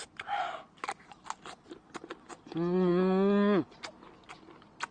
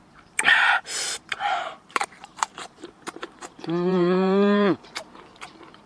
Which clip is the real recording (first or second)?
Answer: first